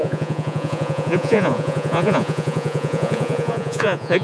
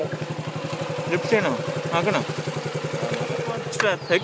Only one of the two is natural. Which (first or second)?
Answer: second